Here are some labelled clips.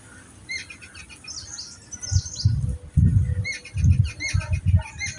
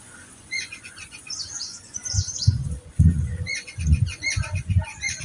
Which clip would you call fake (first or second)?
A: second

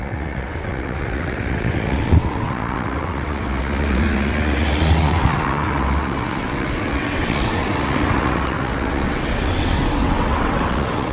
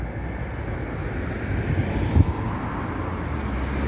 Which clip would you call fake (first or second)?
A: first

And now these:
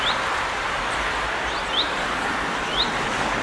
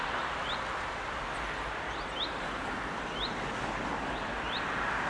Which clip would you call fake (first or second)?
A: first